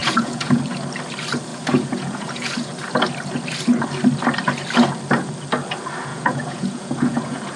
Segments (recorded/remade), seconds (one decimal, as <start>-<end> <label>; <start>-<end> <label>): 0.0-0.6 remade; 0.6-1.5 recorded; 1.5-2.7 remade; 2.7-6.1 recorded; 6.1-7.6 remade